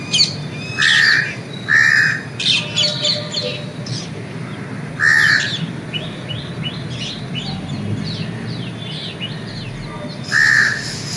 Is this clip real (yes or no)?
yes